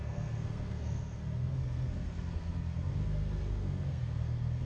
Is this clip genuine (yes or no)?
no